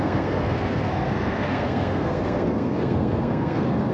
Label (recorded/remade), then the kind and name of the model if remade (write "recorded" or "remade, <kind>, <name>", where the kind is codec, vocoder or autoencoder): remade, codec, SNAC